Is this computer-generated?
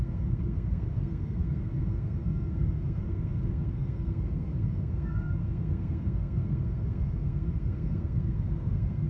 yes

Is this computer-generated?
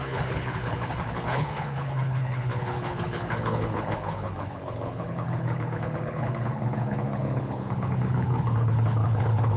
yes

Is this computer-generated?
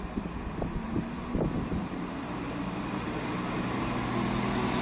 no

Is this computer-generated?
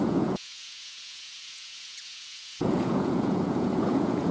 yes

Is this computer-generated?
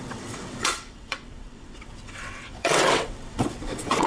yes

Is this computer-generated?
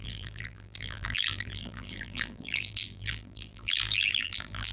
yes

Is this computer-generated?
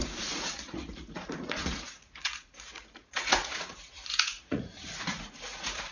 yes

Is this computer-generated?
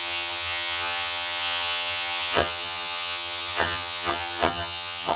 yes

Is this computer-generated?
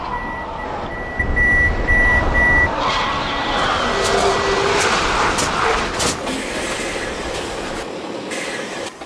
no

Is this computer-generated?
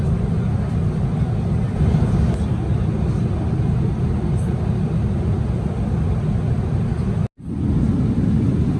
no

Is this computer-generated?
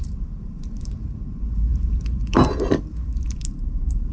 yes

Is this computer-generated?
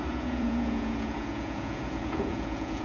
yes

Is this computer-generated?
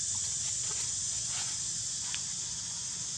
yes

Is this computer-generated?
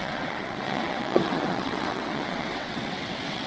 yes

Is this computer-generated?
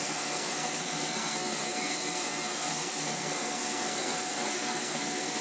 yes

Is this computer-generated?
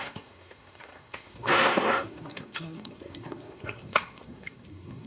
yes